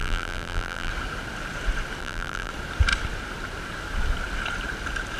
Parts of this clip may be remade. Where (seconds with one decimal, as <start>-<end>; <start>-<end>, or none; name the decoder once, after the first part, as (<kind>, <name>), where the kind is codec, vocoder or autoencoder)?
0.0-0.9 (vocoder, BigVGAN v2); 2.0-2.5